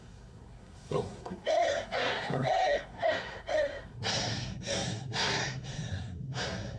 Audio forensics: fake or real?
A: fake